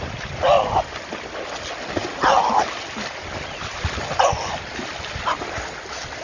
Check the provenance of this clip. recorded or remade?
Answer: recorded